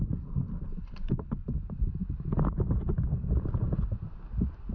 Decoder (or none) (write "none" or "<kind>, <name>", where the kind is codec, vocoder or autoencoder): none